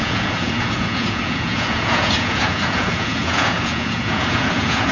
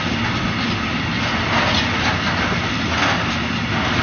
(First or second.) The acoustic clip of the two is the second